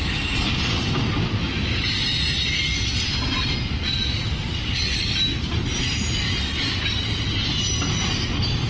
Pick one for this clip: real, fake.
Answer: real